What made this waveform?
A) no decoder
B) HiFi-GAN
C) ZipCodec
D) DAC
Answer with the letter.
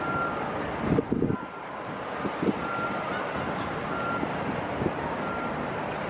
A